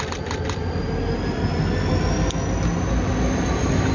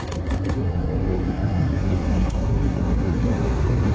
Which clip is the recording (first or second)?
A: first